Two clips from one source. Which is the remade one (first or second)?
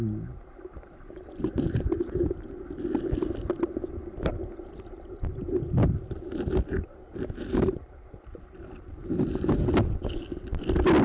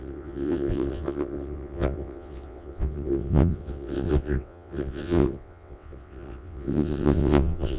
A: second